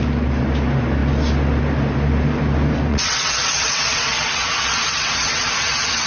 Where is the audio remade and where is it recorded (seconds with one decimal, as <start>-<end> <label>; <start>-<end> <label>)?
0.0-2.9 recorded; 2.9-6.1 remade